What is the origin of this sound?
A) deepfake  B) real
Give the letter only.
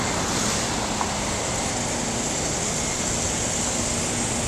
B